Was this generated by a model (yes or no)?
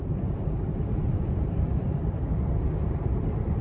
yes